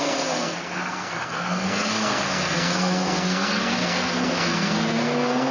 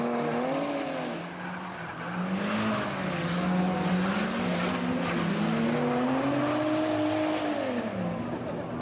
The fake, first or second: first